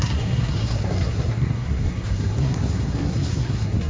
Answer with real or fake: fake